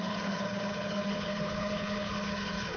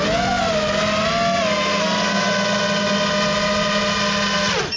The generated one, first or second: first